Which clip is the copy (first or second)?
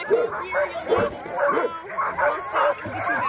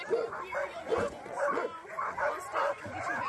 second